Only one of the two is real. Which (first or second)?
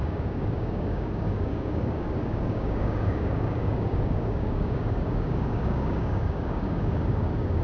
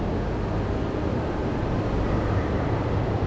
second